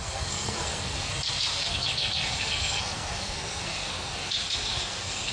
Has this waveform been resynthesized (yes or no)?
yes